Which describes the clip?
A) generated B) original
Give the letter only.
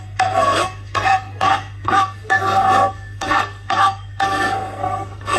A